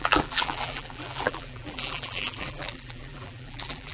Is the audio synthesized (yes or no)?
yes